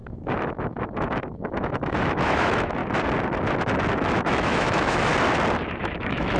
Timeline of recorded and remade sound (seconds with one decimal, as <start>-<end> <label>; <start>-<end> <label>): 0.0-2.8 remade; 2.8-4.1 recorded; 4.1-5.1 remade; 5.1-5.8 recorded; 5.8-6.4 remade